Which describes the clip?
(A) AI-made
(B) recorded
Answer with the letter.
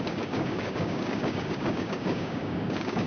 A